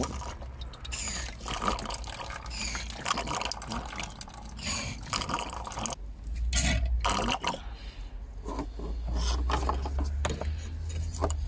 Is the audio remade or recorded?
recorded